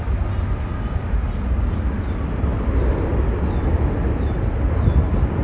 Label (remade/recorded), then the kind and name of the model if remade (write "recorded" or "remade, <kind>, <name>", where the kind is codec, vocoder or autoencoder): recorded